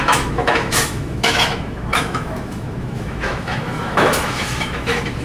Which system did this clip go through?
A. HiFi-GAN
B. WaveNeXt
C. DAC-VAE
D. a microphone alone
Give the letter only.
C